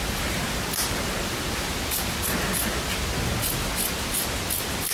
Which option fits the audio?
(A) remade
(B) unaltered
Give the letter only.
B